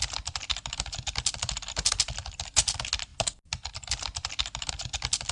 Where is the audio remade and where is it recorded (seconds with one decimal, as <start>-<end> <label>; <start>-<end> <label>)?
0.0-5.3 recorded